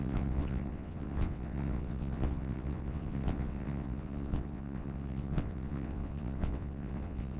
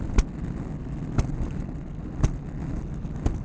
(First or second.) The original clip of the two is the second